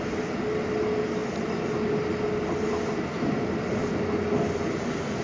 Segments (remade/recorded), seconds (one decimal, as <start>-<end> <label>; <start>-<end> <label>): 0.0-5.2 recorded